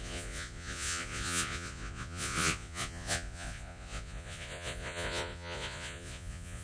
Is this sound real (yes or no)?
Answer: no